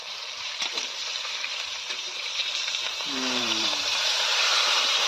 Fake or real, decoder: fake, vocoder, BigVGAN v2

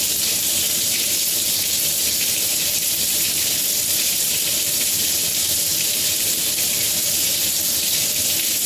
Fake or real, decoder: fake, vocoder, BigVGAN v2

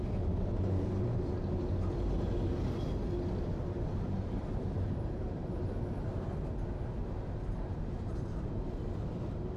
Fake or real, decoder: real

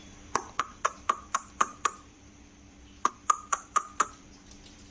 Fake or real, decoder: fake, vocoder, BigVGAN v2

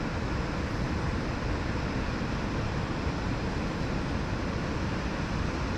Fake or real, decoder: real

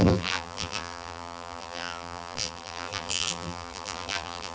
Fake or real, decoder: fake, vocoder, BigVGAN v2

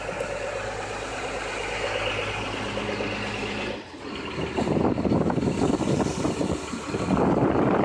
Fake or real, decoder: real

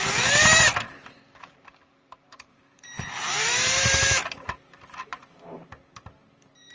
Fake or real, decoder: fake, vocoder, BigVGAN v2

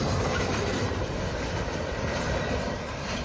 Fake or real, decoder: fake, vocoder, BigVGAN v2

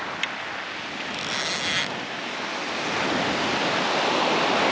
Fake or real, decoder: real